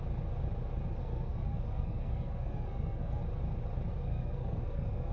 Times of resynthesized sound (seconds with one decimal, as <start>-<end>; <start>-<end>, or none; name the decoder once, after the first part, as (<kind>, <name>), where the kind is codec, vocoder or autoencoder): 1.0-3.2 (codec, SNAC); 3.9-5.1